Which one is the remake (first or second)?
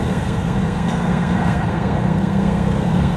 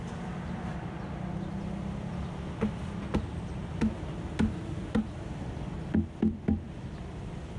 first